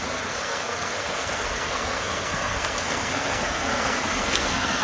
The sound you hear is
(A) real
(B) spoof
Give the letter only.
B